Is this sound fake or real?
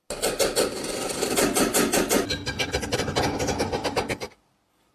real